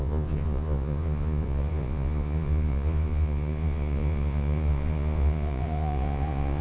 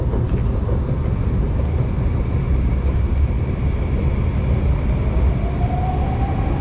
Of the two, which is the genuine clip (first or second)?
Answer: second